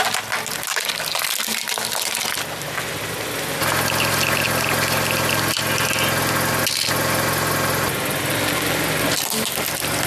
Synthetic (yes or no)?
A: no